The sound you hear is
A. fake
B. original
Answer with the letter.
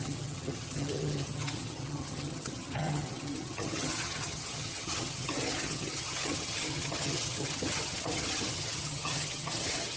A